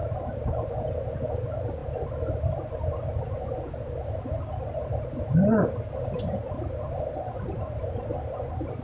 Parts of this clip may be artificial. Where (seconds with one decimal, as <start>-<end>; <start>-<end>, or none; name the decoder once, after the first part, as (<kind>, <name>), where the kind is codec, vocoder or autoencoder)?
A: 0.0-0.9 (vocoder, BigVGAN v2); 6.4-8.8